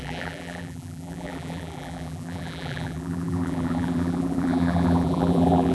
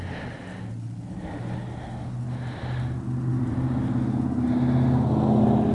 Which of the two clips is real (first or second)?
second